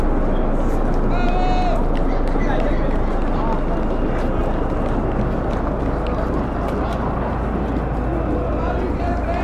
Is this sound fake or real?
real